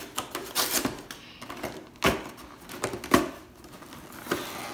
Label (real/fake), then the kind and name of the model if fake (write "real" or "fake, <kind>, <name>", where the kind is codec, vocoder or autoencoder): real